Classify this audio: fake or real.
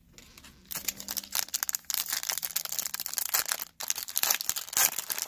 real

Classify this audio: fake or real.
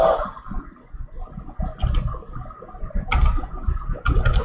real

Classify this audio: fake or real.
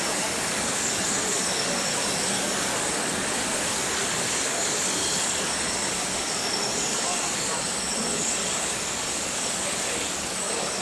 fake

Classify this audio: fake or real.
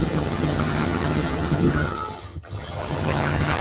fake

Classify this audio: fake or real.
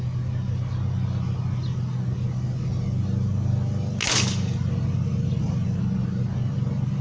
real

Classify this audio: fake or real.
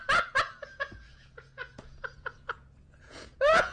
fake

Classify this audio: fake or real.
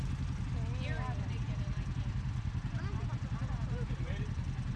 real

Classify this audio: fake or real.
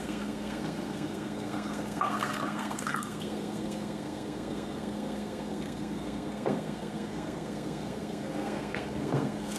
fake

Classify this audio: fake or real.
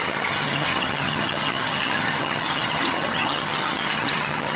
fake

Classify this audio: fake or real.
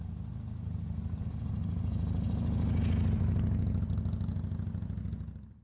real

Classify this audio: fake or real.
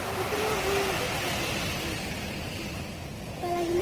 real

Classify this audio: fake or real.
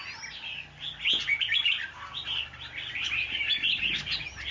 real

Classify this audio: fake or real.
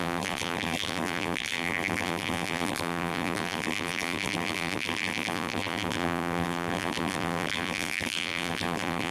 fake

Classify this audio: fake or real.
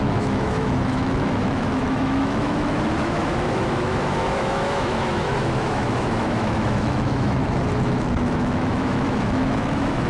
fake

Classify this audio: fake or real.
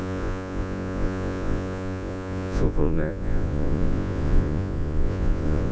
fake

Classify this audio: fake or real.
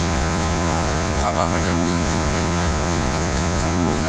fake